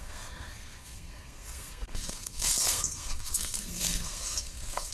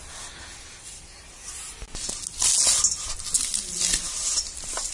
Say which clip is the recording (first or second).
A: second